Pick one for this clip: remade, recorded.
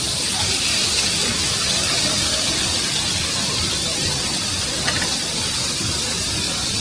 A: recorded